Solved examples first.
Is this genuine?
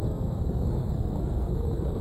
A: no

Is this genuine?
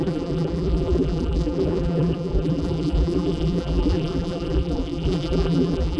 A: no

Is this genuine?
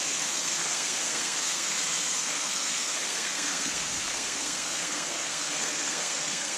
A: no